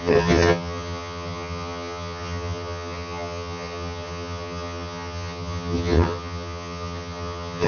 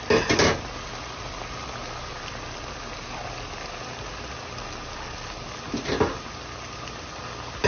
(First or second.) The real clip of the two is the second